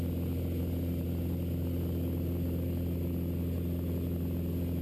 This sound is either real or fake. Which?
real